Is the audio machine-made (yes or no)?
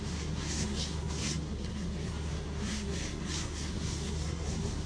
yes